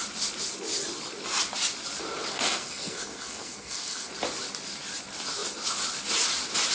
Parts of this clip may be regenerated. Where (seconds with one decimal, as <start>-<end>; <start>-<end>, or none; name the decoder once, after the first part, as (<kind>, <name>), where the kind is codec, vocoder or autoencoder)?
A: 2.3-4.1 (codec, SNAC)